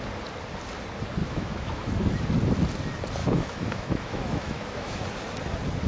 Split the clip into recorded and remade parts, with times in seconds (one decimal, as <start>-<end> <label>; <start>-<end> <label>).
0.0-1.2 recorded; 1.2-2.0 remade; 2.0-3.2 recorded; 3.2-5.0 remade; 5.0-5.9 recorded